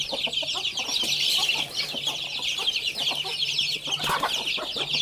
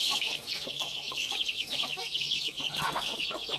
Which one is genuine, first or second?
first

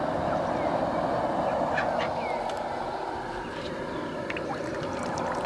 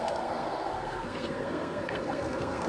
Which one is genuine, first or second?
first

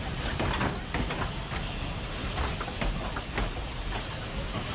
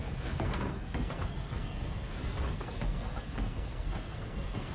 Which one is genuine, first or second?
first